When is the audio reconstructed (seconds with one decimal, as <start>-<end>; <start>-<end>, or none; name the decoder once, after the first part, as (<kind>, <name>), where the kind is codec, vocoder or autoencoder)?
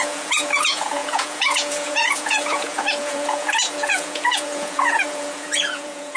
0.0-6.2 (vocoder, Vocos)